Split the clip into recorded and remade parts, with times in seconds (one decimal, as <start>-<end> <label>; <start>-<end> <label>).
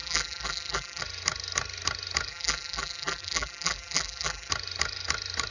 0.0-1.0 remade; 1.0-2.3 recorded; 2.3-4.5 remade; 4.5-5.5 recorded